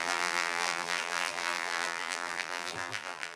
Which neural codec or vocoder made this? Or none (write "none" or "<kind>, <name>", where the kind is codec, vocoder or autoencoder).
vocoder, BigVGAN v2